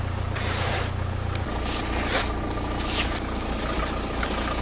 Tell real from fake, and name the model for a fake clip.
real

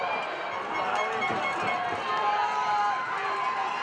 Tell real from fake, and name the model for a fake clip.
real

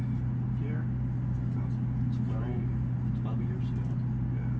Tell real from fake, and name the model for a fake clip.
real